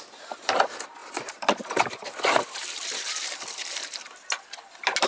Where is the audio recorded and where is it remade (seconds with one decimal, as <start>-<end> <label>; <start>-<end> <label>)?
0.0-1.0 recorded; 1.0-3.7 remade; 3.7-5.1 recorded

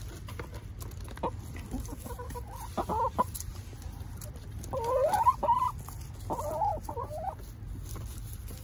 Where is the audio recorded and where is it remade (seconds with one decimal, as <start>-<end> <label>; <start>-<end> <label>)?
0.0-8.6 recorded

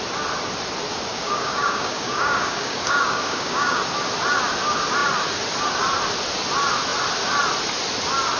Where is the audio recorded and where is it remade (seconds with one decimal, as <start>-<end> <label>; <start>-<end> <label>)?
0.0-1.1 recorded; 1.1-3.8 remade; 3.8-8.4 recorded